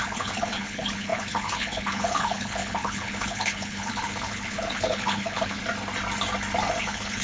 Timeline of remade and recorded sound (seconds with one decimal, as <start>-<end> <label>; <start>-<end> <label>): 0.0-5.6 remade; 5.6-6.8 recorded; 6.8-7.2 remade

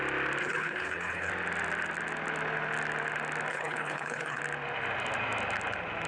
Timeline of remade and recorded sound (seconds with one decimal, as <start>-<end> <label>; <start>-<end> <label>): 0.0-0.4 recorded; 0.4-1.3 remade; 1.3-3.5 recorded; 3.5-4.4 remade; 4.4-6.1 recorded

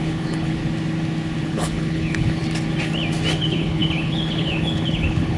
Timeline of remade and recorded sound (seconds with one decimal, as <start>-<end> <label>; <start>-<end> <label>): 0.0-0.6 remade; 0.6-1.4 recorded; 1.4-2.4 remade; 2.4-3.4 recorded; 3.4-5.4 remade

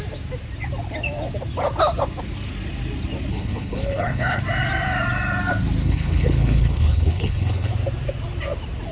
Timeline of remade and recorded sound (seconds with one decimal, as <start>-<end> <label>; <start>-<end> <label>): 0.0-3.3 recorded; 3.3-4.4 remade; 4.4-5.8 recorded; 5.8-7.7 remade; 7.7-8.9 recorded

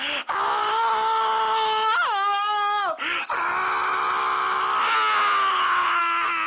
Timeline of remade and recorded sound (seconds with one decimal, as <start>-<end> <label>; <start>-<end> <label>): 0.0-5.5 recorded; 5.5-6.0 remade; 6.0-6.5 recorded

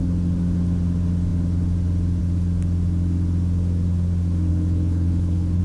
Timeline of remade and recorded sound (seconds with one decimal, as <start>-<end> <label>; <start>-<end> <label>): 0.0-4.5 recorded; 4.5-5.6 remade

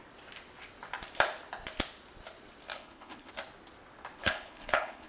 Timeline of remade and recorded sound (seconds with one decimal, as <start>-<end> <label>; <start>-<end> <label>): 0.0-2.7 recorded; 2.7-3.3 remade; 3.3-4.2 recorded; 4.2-5.1 remade

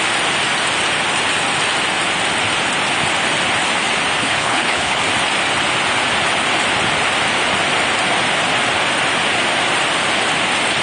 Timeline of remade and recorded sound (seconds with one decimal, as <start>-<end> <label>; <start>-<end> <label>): 0.0-4.2 recorded; 4.2-5.0 remade; 5.0-10.8 recorded